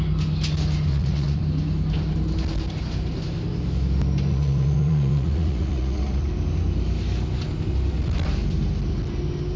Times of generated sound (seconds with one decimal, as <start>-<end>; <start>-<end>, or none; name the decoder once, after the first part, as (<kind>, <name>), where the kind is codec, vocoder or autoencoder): 0.9-1.4 (vocoder, Vocos); 4.3-6.3